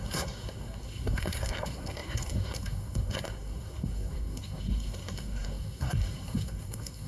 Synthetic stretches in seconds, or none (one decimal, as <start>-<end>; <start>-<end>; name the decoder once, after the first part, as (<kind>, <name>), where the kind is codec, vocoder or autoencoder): 0.0-7.1 (codec, SNAC)